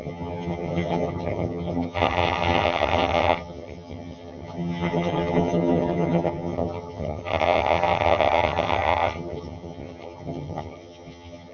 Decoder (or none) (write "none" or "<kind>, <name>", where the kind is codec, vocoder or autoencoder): vocoder, HiFi-GAN